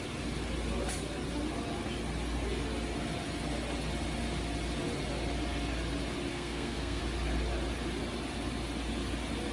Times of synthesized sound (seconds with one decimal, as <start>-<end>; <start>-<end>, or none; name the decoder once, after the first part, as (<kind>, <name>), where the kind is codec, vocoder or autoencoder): 6.3-7.0 (codec, SNAC)